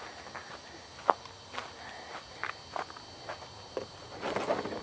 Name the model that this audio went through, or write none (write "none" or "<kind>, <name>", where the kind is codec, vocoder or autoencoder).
none